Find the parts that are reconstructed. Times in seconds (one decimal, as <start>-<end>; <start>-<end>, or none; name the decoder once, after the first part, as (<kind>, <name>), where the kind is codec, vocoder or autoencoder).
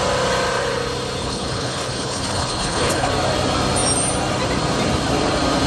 1.2-3.1 (codec, HILCodec)